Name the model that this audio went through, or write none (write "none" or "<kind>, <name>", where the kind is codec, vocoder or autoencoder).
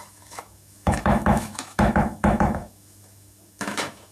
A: autoencoder, DAC-VAE